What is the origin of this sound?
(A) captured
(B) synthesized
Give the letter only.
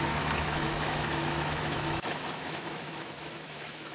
B